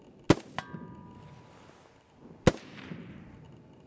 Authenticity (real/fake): real